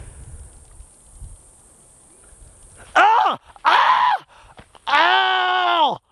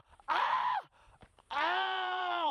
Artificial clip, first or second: second